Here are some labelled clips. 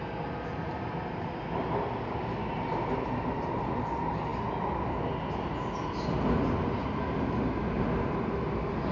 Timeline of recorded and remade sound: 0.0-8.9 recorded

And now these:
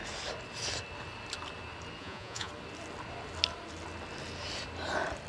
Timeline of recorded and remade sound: 0.0-2.0 recorded; 2.0-2.5 remade; 2.5-5.3 recorded

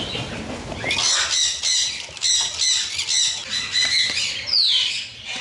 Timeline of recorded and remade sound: 0.0-5.4 recorded

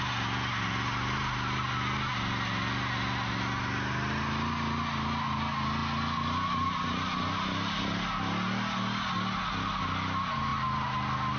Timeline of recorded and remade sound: 0.0-11.4 recorded

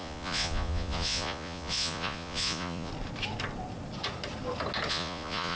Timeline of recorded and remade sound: 0.0-2.9 remade; 2.9-4.9 recorded; 4.9-5.6 remade

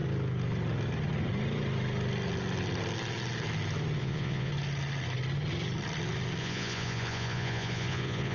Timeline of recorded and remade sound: 0.0-4.0 recorded; 4.0-4.5 remade; 4.5-6.4 recorded; 6.4-8.3 remade

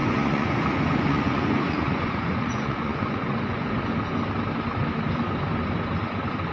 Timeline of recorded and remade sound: 0.0-3.9 remade; 3.9-6.5 recorded

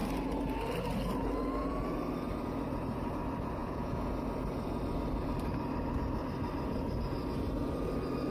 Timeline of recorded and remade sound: 0.0-3.6 recorded; 3.6-4.1 remade; 4.1-8.3 recorded